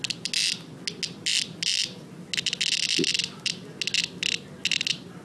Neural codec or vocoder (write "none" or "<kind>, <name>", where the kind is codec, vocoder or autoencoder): none